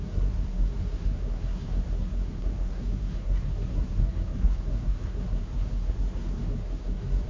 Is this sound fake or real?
fake